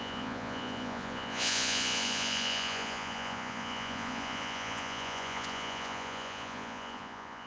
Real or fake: fake